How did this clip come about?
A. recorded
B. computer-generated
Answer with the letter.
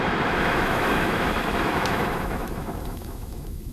B